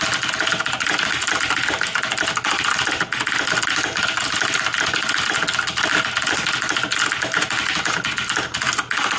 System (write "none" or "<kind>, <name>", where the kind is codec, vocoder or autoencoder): none